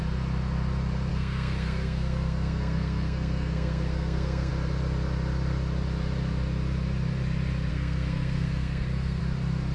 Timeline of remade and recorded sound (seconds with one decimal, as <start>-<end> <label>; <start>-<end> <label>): 0.0-1.1 recorded; 1.1-4.5 remade; 4.5-7.7 recorded; 7.7-9.2 remade; 9.2-9.7 recorded